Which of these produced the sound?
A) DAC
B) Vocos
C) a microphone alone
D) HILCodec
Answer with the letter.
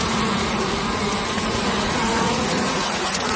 B